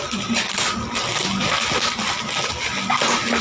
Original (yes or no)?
yes